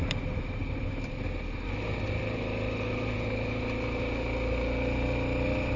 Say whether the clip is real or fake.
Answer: real